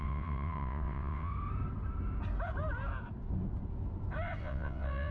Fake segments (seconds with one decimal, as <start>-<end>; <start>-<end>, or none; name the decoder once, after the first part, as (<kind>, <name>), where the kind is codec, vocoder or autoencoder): 0.0-1.3 (vocoder, WaveNeXt); 4.4-5.1